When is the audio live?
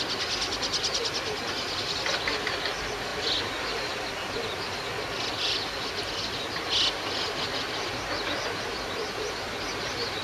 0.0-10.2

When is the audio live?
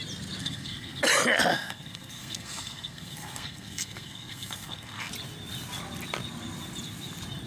0.0-0.4; 1.0-1.5; 5.1-7.5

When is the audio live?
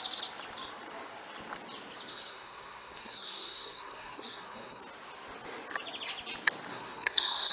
0.0-2.1; 4.8-6.7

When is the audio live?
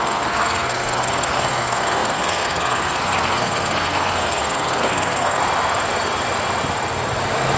5.4-7.6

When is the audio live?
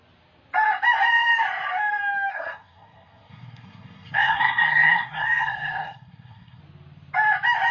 0.0-2.3; 6.6-7.7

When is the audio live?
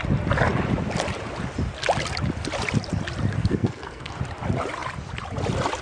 0.0-3.4; 4.2-5.8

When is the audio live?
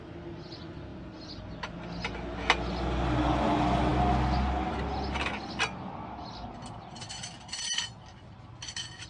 0.0-9.1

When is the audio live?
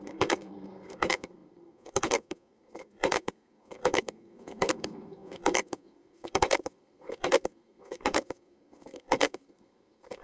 none